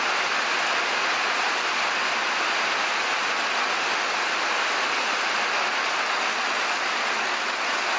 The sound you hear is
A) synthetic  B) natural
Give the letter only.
B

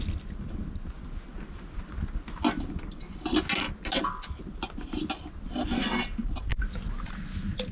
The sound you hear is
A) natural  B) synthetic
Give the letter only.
A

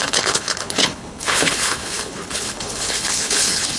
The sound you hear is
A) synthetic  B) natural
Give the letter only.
A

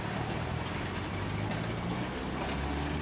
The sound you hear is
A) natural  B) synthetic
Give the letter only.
A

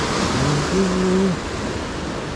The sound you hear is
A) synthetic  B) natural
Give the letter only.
B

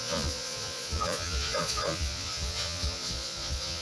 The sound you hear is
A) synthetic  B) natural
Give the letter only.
A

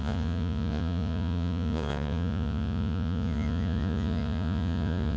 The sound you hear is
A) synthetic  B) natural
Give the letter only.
A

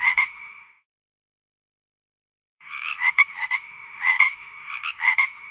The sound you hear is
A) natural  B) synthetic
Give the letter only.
B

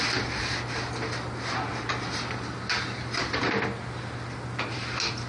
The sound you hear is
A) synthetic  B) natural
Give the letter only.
B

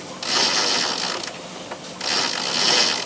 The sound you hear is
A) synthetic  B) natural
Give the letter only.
B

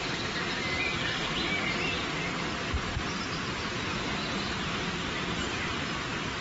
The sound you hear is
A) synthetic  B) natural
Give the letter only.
B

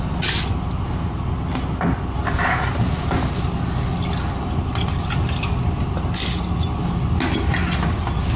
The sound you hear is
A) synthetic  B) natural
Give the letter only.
B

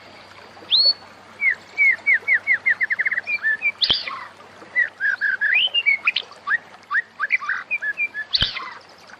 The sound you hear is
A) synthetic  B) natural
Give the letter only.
B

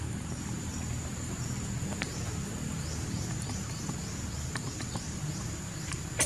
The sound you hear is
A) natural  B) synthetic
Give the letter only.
B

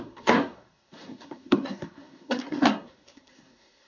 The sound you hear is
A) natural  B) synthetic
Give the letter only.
B